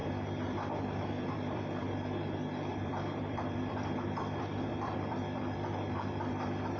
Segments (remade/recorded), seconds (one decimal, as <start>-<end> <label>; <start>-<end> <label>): 0.0-1.9 remade; 1.9-2.7 recorded; 2.7-6.8 remade